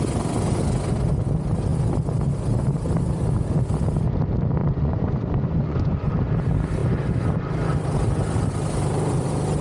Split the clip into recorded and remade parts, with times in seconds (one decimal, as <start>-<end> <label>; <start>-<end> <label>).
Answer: 0.0-4.6 recorded; 4.6-6.1 remade; 6.1-9.6 recorded

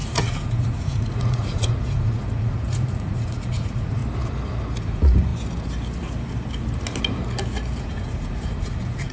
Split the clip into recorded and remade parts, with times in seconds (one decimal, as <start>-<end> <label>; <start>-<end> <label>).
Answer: 0.0-4.0 remade; 4.0-4.8 recorded; 4.8-5.3 remade; 5.3-7.8 recorded; 7.8-9.1 remade